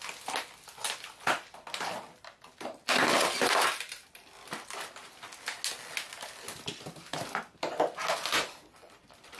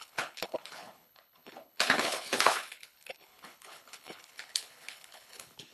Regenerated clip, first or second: second